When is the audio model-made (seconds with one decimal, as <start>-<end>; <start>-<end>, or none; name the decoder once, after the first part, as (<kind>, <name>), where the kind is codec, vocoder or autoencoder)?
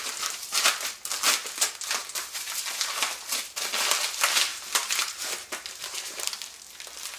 4.5-6.3 (vocoder, BigVGAN v2)